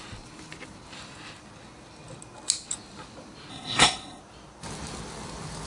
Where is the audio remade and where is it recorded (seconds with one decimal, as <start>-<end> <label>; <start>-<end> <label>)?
0.0-3.5 recorded; 3.5-4.2 remade; 4.2-5.7 recorded